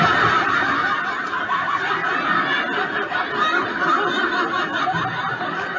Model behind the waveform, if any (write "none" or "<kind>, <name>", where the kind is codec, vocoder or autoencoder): none